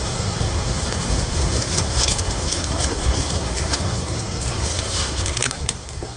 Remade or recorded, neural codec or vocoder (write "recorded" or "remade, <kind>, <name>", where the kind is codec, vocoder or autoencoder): remade, codec, SNAC